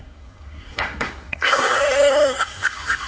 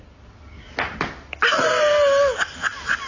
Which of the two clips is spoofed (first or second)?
first